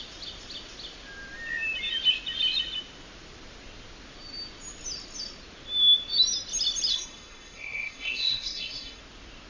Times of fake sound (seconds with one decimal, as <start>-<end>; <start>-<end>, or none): 6.9-9.0